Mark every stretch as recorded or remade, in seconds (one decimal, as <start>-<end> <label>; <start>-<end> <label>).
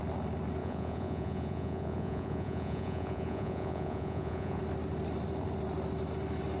0.0-0.6 recorded; 0.6-4.6 remade; 4.6-6.6 recorded